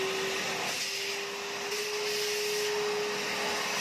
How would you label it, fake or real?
real